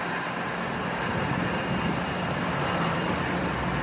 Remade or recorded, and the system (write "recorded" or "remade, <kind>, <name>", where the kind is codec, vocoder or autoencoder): recorded